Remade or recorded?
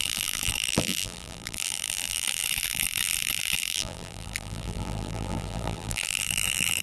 remade